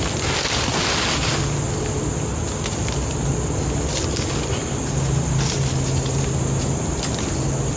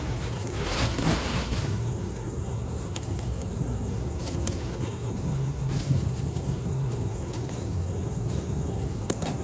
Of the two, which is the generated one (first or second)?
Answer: second